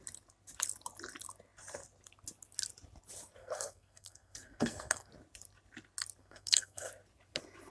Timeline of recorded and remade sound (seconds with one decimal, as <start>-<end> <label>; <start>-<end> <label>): 0.0-3.4 recorded; 3.4-5.1 remade; 5.1-6.2 recorded; 6.2-6.9 remade; 6.9-7.7 recorded